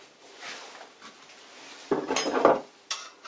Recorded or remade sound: recorded